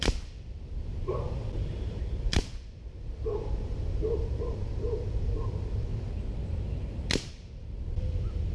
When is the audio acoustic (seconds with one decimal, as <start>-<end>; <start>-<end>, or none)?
1.1-2.0; 5.9-7.3